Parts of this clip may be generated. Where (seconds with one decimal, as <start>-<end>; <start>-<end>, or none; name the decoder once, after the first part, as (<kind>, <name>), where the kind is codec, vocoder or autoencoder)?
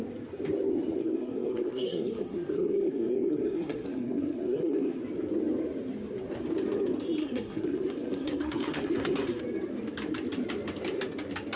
1.0-5.0 (codec, SNAC); 7.2-9.4